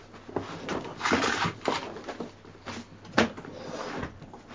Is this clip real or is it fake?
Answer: real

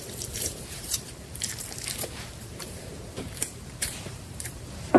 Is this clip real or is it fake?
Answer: fake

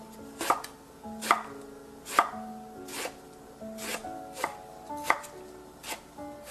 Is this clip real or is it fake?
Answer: real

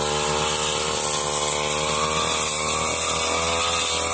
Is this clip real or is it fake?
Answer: real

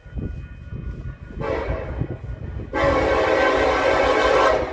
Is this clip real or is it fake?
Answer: real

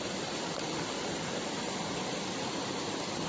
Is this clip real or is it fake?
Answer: fake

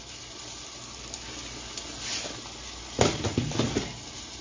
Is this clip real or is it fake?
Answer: real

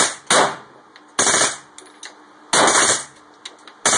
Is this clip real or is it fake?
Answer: real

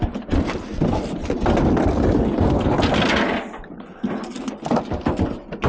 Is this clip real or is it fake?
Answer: real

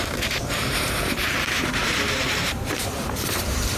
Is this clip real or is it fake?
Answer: fake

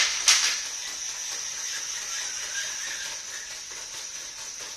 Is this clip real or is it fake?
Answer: real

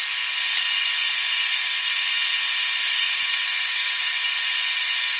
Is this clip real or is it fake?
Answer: real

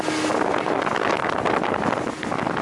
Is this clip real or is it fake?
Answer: real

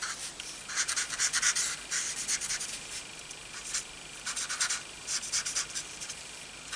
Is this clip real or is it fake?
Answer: real